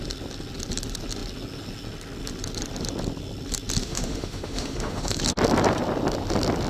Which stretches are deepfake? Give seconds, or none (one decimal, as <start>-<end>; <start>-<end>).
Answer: 3.8-5.2